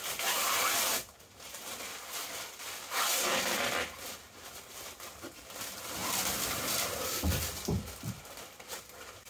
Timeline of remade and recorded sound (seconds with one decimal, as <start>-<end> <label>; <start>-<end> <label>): 0.0-9.3 recorded